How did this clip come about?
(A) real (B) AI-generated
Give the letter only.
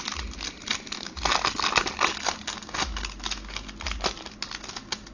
A